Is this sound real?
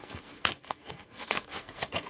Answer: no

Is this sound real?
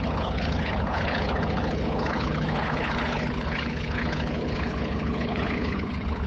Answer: no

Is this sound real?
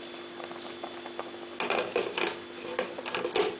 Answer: yes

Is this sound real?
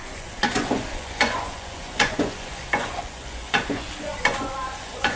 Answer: no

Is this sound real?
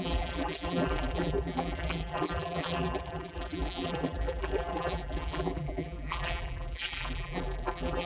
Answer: no